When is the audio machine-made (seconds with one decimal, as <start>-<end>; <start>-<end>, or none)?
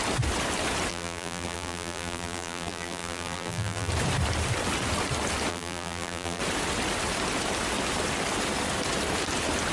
0.9-3.9; 5.5-6.4